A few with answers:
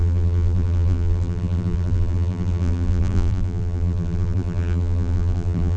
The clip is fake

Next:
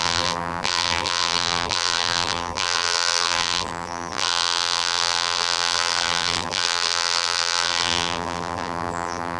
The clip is fake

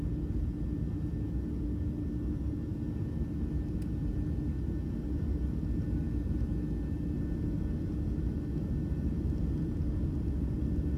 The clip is real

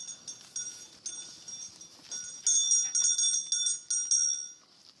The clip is real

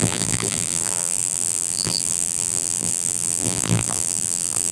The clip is fake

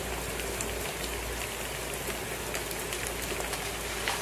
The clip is real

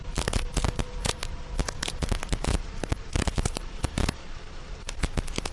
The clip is fake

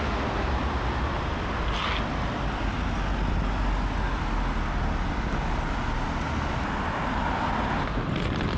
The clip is real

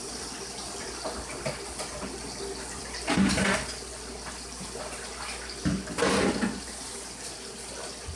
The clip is real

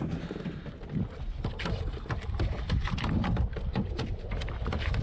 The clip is real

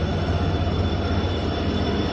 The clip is real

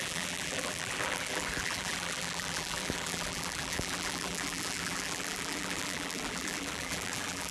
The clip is fake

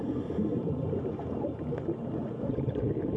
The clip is fake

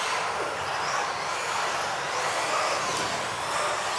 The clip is real